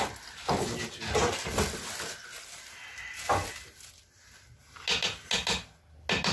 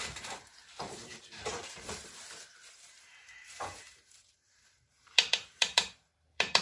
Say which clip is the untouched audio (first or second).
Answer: first